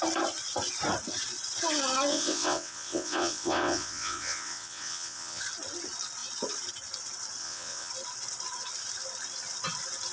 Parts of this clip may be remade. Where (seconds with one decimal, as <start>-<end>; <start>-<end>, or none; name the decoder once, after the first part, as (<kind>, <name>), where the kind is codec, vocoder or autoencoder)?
2.1-5.4 (vocoder, WaveNeXt); 7.4-7.9